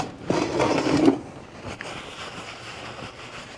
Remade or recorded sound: recorded